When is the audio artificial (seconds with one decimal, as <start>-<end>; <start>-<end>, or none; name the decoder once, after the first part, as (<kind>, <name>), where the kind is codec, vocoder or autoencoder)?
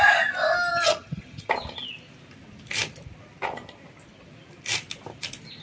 0.7-1.5 (vocoder, HiFi-GAN)